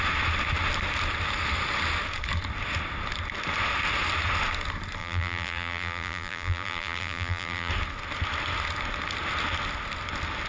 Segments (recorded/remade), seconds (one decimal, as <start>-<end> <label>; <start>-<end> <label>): 0.0-5.0 recorded; 5.0-7.7 remade; 7.7-10.5 recorded